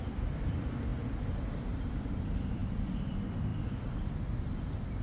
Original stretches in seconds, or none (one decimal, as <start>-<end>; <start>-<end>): 0.9-1.6